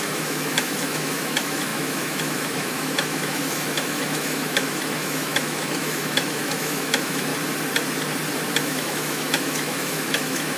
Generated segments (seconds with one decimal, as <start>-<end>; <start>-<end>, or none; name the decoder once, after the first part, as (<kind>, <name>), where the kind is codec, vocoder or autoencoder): 0.0-7.3 (autoencoder, DAC-VAE); 8.6-10.6